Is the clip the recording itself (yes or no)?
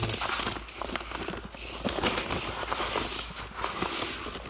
yes